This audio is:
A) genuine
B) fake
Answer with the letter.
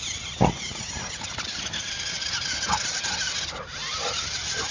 A